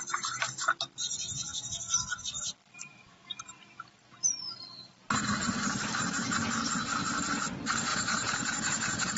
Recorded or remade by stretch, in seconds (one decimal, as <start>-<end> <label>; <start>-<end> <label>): 0.0-7.9 recorded; 7.9-9.2 remade

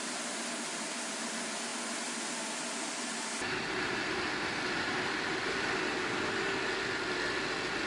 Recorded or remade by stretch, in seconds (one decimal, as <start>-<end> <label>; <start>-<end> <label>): 0.0-7.9 recorded

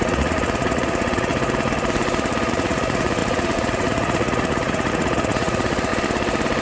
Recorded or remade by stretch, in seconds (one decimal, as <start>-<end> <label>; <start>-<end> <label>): 0.0-1.3 remade; 1.3-2.5 recorded; 2.5-5.9 remade; 5.9-6.6 recorded

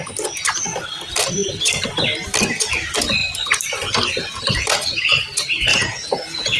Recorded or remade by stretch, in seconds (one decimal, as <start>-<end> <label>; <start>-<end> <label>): 0.0-5.7 recorded; 5.7-6.6 remade

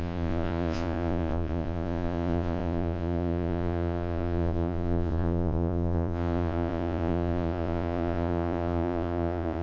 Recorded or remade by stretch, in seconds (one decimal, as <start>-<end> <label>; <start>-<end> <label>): 0.0-9.6 remade

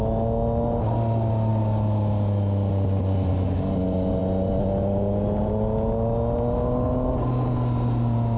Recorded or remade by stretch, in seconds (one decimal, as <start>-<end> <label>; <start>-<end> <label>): 0.0-8.4 recorded

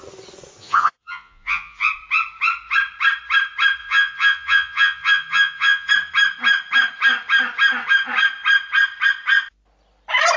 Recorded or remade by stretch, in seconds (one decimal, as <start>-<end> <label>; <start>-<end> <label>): 0.0-0.6 recorded; 0.6-1.9 remade; 1.9-3.8 recorded; 3.8-5.9 remade; 5.9-10.4 recorded

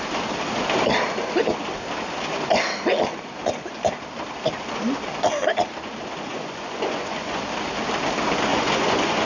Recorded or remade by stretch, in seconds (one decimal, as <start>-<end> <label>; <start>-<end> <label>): 0.0-6.3 recorded; 6.3-7.4 remade; 7.4-8.5 recorded; 8.5-9.3 remade